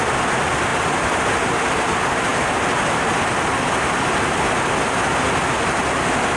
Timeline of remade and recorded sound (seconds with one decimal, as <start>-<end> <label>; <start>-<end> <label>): 0.0-6.4 recorded